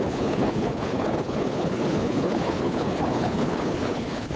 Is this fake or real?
fake